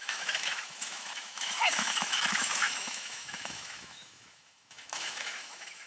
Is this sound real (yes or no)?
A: no